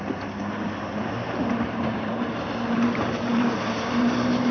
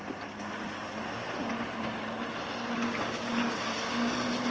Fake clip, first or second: first